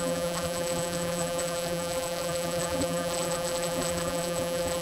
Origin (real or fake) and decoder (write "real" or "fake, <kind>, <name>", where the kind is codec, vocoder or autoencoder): fake, vocoder, BigVGAN v2